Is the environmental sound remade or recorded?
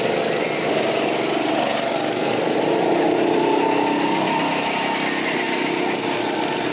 recorded